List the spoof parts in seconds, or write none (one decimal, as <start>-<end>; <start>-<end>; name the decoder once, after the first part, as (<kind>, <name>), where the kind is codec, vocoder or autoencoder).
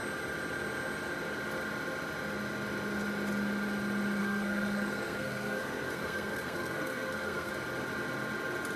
4.2-7.5 (codec, SNAC)